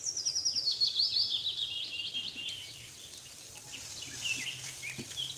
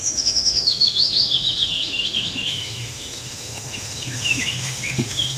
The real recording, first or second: first